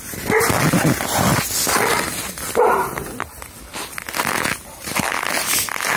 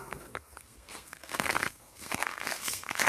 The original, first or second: first